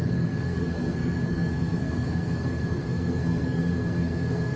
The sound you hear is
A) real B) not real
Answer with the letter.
B